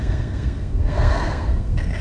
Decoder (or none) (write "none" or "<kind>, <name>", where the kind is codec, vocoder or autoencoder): codec, SNAC